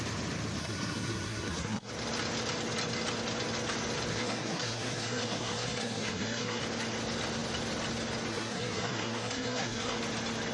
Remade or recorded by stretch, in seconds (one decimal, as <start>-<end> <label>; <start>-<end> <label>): 0.0-0.6 recorded; 0.6-1.9 remade; 1.9-4.1 recorded; 4.1-6.6 remade; 6.6-8.3 recorded; 8.3-10.0 remade; 10.0-10.5 recorded